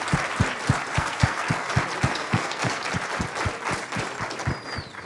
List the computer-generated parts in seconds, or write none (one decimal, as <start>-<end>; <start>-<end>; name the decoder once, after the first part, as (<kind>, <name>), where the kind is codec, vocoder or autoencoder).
0.9-1.7 (codec, SNAC); 2.1-2.8